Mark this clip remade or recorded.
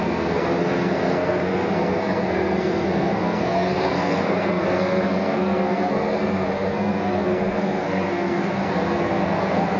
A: remade